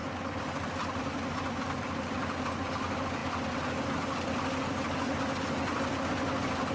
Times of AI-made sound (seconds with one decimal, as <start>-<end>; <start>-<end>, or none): none